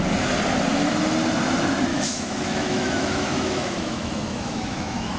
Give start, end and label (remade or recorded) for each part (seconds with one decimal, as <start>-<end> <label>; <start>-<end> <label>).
0.0-1.9 recorded; 1.9-5.2 remade